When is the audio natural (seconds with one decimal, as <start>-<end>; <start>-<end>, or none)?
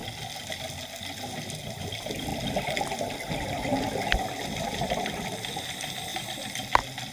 0.0-2.3; 5.6-7.1